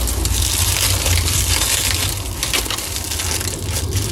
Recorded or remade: recorded